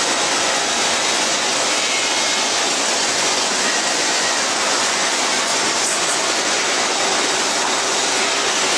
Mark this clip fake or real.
fake